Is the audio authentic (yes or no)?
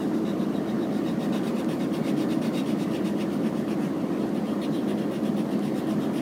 yes